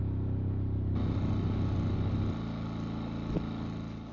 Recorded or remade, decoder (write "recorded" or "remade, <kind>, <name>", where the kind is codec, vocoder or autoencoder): recorded